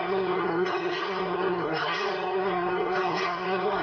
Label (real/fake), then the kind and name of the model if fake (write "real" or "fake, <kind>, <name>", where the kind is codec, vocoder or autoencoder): fake, codec, SNAC